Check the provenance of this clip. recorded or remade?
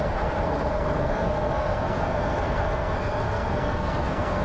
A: remade